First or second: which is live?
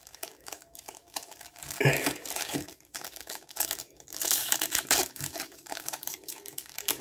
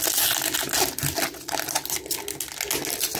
second